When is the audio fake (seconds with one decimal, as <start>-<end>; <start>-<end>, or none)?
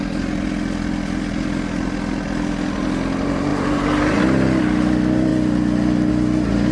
3.5-4.6